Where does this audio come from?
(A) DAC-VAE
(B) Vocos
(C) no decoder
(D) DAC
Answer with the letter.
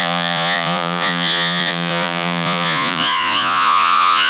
B